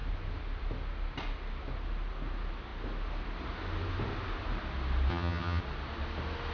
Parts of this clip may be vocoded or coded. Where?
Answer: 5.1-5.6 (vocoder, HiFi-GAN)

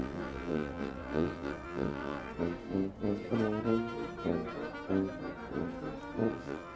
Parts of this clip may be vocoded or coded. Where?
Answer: 0.0-2.3 (vocoder, WaveNeXt); 6.3-6.8

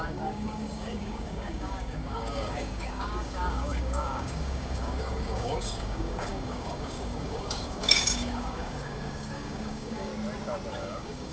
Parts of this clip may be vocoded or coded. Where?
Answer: 0.0-10.1 (codec, DAC); 10.7-11.3

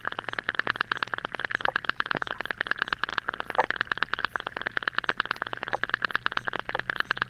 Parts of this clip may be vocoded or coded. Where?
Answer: 1.8-2.3 (autoencoder, DAC-VAE)

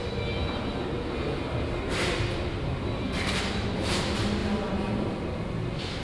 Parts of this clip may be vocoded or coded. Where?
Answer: 0.4-4.0 (vocoder, BigVGAN v2); 4.4-5.4

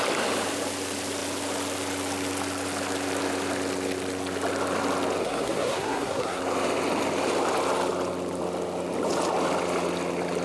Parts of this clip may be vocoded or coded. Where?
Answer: 5.2-6.4 (codec, SNAC)

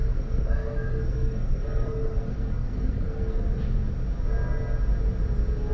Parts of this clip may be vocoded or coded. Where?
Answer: 0.0-3.4 (codec, SNAC)

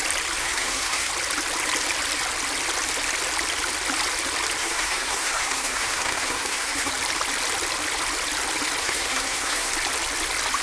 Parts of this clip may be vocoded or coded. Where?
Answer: 0.4-1.1 (codec, SNAC); 4.6-6.9; 8.8-9.7